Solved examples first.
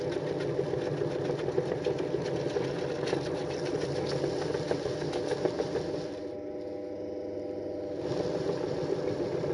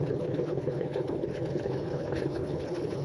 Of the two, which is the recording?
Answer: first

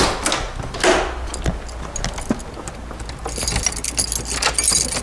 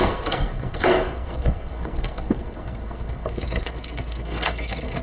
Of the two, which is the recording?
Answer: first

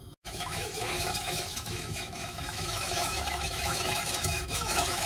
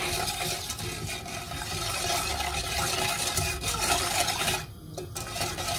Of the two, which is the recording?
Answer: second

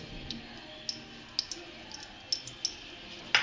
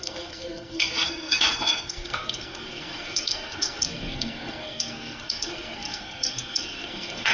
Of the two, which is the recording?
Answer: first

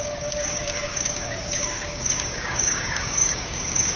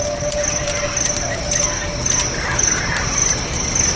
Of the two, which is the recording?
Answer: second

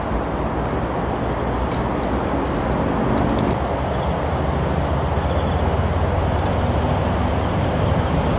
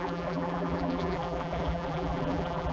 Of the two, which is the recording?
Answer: first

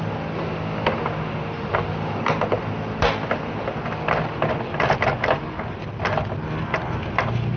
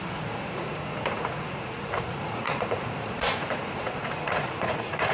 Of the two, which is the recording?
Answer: first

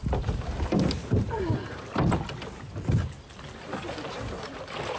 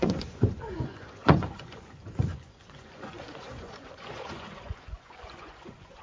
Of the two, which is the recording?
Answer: first